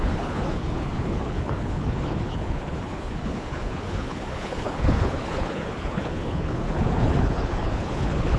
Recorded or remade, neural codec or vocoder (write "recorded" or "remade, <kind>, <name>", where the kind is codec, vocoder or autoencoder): remade, codec, HILCodec